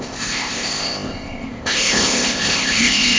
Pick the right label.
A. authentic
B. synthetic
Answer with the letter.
B